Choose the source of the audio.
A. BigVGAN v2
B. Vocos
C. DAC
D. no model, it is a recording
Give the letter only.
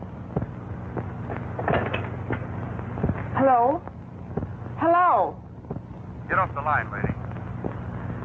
D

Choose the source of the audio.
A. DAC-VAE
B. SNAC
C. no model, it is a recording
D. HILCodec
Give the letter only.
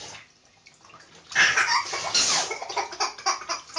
C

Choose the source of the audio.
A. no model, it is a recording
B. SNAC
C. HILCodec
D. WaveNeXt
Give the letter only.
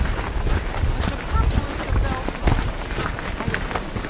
A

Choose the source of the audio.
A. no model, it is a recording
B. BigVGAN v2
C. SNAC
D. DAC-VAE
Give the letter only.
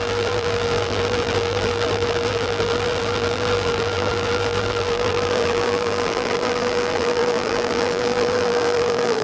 B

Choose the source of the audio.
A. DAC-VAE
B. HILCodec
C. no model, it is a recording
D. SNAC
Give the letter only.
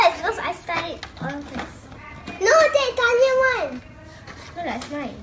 C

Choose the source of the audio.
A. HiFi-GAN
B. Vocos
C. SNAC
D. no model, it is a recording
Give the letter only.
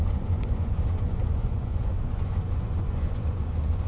B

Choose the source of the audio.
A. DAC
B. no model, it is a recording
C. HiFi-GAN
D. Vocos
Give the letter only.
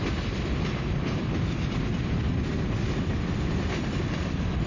B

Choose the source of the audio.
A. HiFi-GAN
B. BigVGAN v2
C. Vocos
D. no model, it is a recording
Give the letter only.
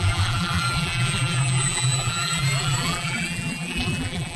B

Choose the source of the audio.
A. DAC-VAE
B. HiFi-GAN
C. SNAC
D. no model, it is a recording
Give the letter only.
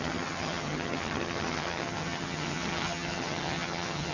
B